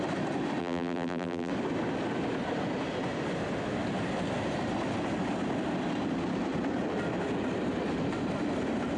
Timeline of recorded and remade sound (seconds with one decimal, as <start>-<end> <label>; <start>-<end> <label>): 0.0-0.6 recorded; 0.6-1.5 remade; 1.5-9.0 recorded